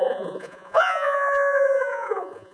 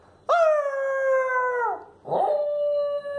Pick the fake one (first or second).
first